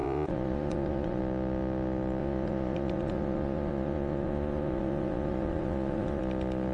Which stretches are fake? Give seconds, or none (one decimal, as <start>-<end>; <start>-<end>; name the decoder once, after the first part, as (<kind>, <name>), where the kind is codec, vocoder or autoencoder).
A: 0.0-1.2 (vocoder, Vocos); 2.2-6.2